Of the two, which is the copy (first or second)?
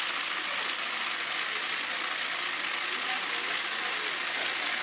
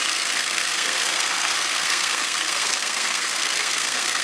second